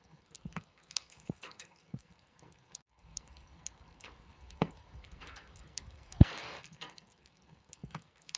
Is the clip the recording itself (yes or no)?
no